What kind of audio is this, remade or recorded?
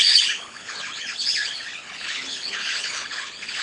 remade